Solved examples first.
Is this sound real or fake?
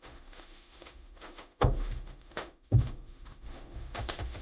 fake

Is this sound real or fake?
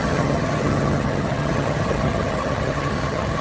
fake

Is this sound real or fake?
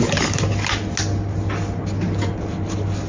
real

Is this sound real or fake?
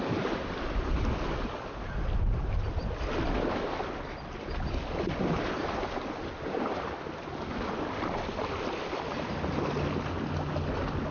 real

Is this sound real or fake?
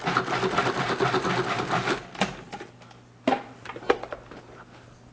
real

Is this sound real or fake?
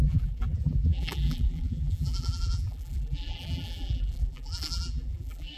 fake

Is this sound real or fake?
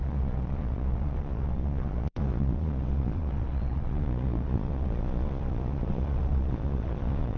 fake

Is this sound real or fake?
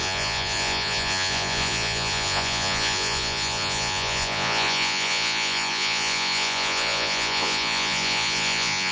fake